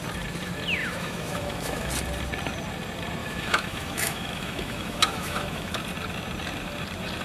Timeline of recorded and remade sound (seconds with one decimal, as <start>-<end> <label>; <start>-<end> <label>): 0.0-0.8 recorded; 0.8-1.9 remade; 1.9-3.2 recorded; 3.2-5.8 remade; 5.8-7.2 recorded